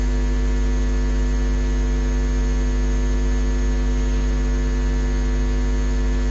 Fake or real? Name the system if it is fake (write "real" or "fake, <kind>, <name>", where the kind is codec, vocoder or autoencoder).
real